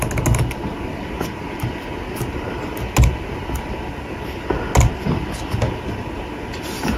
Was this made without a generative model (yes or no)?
yes